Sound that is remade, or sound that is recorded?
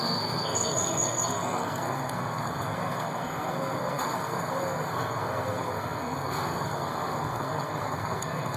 remade